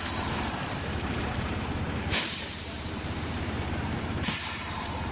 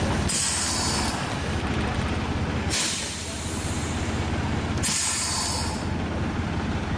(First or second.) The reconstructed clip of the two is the first